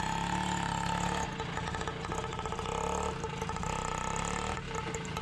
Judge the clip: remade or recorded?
recorded